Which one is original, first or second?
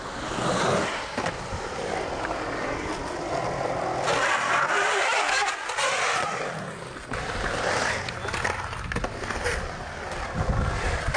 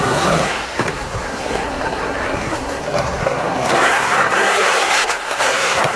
first